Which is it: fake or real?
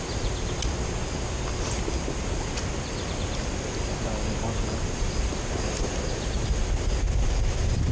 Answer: real